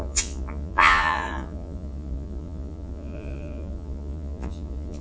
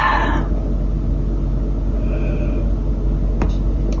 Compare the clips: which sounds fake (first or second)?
first